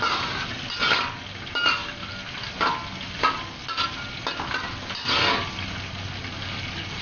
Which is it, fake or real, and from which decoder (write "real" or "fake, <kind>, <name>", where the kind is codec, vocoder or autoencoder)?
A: real